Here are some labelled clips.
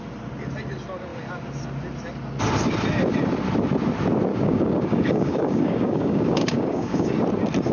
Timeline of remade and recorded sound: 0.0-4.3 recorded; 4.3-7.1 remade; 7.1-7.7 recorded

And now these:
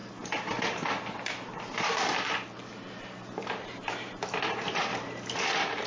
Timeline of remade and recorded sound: 0.0-5.9 recorded

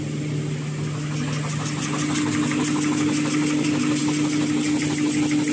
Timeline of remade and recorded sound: 0.0-5.5 recorded

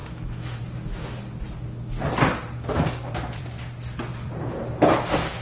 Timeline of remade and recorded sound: 0.0-0.6 remade; 0.6-5.4 recorded

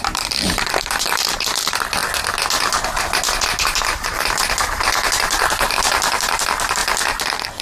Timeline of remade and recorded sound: 0.0-2.0 remade; 2.0-4.8 recorded; 4.8-6.8 remade; 6.8-7.6 recorded

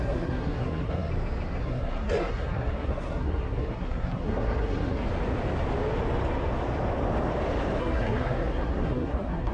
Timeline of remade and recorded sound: 0.0-1.1 remade; 1.1-1.6 recorded; 1.6-5.1 remade; 5.1-7.8 recorded; 7.8-9.5 remade

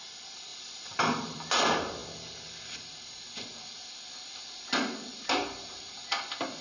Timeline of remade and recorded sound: 0.0-0.5 recorded; 0.5-1.5 remade; 1.5-6.6 recorded